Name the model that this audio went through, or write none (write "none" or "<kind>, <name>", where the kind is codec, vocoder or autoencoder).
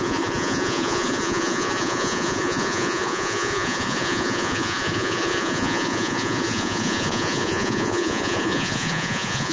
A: vocoder, Vocos